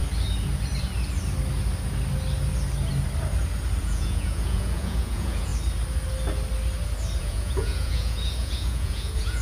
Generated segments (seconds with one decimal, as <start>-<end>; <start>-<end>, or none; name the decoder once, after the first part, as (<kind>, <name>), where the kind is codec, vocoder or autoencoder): 3.8-5.5 (vocoder, Vocos); 7.2-9.4